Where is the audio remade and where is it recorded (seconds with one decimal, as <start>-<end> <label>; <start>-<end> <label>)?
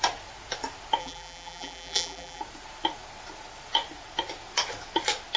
0.0-1.0 recorded; 1.0-2.4 remade; 2.4-5.4 recorded